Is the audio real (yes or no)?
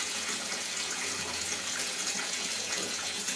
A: no